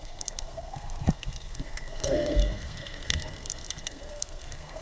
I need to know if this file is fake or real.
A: fake